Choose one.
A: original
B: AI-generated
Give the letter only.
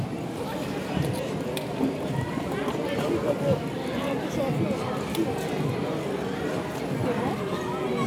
A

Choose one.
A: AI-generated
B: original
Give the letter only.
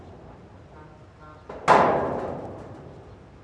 B